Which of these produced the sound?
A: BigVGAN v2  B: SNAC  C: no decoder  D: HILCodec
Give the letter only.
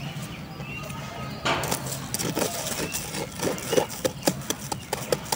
C